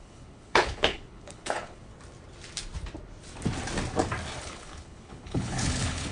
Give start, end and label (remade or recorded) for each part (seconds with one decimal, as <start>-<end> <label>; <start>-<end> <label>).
0.0-1.9 remade; 1.9-4.4 recorded; 4.4-6.1 remade